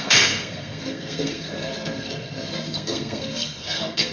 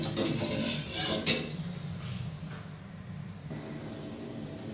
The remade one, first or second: first